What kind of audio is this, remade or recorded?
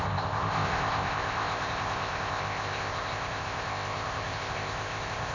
remade